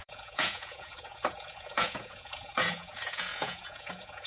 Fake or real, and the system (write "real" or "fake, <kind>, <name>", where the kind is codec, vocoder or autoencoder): fake, vocoder, Vocos